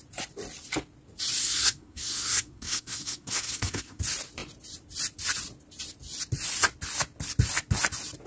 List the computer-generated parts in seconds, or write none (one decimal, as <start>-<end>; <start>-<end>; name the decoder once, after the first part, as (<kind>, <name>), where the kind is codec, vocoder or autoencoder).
1.4-4.0 (codec, SNAC)